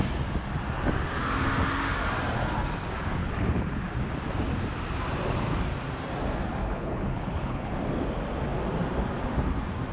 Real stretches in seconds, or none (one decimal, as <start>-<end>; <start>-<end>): 0.0-3.2; 3.8-6.6; 7.7-9.9